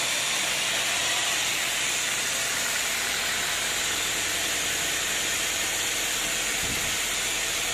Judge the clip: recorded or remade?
remade